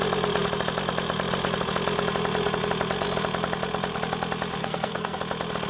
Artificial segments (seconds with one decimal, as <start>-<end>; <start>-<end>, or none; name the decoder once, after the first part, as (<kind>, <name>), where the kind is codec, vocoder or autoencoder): 4.6-5.2 (codec, SNAC)